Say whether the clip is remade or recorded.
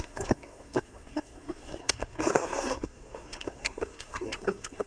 remade